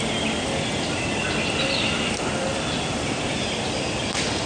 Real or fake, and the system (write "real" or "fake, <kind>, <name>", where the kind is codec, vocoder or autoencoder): real